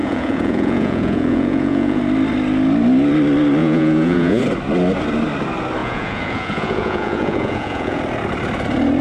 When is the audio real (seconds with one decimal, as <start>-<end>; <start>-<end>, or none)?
2.0-3.6; 4.4-5.8; 8.0-9.0